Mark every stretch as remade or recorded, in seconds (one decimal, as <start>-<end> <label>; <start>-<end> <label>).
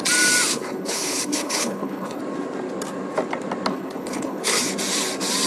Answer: 0.0-0.5 recorded; 0.5-2.2 remade; 2.2-3.7 recorded; 3.7-4.7 remade; 4.7-5.5 recorded